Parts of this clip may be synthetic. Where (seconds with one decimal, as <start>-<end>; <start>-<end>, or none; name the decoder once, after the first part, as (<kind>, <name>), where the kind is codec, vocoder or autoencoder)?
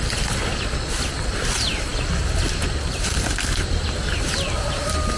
none